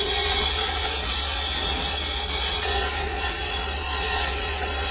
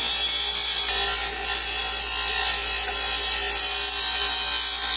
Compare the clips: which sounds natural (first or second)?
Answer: second